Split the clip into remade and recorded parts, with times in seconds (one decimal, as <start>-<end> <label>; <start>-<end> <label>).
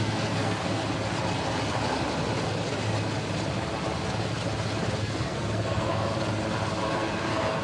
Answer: 0.0-0.8 remade; 0.8-5.0 recorded; 5.0-6.1 remade; 6.1-6.9 recorded; 6.9-7.6 remade